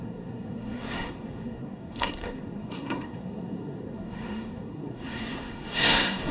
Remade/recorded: remade